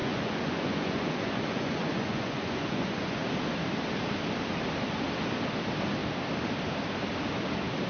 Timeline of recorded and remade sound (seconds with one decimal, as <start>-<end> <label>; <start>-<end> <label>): 0.0-3.2 remade; 3.2-7.9 recorded